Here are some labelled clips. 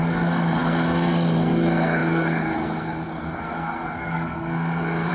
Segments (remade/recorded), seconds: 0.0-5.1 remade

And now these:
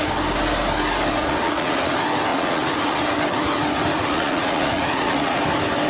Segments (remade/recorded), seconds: 0.0-1.2 recorded; 1.2-1.9 remade; 1.9-2.3 recorded; 2.3-3.0 remade; 3.0-3.9 recorded; 3.9-5.4 remade; 5.4-5.9 recorded